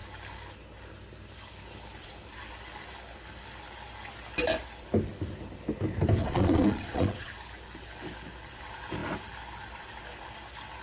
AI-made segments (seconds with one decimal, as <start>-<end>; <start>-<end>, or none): 6.2-7.3